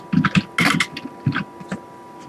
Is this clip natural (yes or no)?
yes